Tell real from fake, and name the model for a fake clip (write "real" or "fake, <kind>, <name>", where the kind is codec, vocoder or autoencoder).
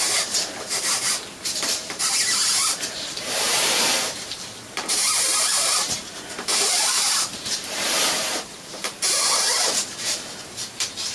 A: fake, vocoder, BigVGAN v2